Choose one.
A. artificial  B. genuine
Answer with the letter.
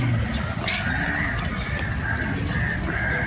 B